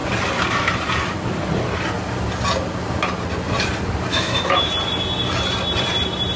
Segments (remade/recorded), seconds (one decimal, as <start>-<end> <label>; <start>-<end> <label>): 0.0-4.1 recorded; 4.1-4.7 remade; 4.7-6.4 recorded